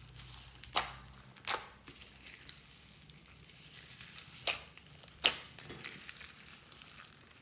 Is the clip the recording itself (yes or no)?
yes